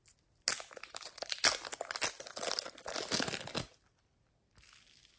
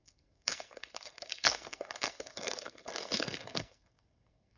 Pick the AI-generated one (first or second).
second